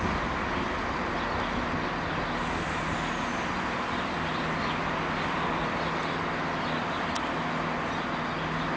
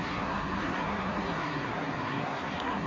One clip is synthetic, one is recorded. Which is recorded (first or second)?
first